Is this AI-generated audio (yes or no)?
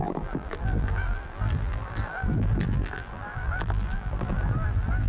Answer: yes